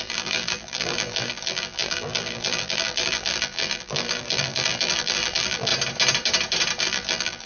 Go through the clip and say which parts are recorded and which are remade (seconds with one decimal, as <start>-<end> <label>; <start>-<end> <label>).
0.0-5.7 remade; 5.7-6.8 recorded; 6.8-7.5 remade